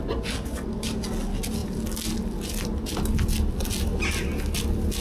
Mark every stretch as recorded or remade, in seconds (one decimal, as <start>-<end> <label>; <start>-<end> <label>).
0.0-5.0 recorded